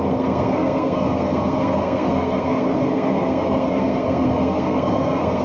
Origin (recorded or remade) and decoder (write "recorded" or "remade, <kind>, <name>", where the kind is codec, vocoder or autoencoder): remade, codec, SNAC